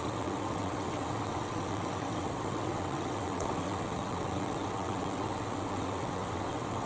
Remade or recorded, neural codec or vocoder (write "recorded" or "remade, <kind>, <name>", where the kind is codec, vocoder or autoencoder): remade, vocoder, WaveNeXt